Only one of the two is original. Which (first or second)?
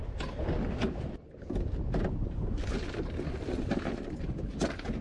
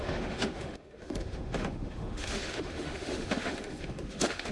first